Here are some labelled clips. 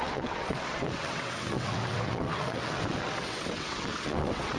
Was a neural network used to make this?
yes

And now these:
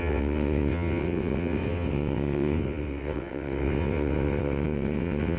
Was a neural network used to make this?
yes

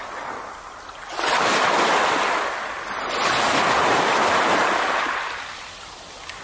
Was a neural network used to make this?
no